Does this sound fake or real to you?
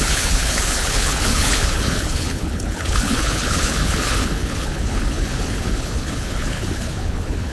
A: fake